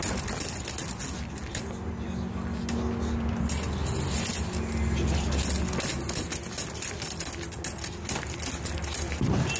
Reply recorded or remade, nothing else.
recorded